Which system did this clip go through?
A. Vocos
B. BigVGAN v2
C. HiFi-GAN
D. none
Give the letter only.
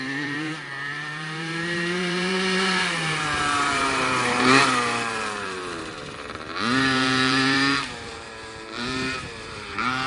B